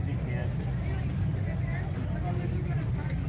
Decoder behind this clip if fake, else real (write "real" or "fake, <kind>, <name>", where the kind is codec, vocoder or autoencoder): real